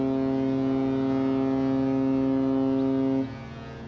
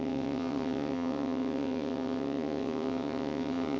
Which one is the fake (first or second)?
second